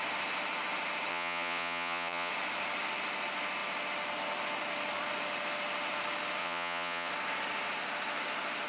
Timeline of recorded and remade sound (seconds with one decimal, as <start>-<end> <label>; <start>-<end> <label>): 0.0-1.1 recorded; 1.1-2.3 remade; 2.3-6.4 recorded; 6.4-7.1 remade; 7.1-8.7 recorded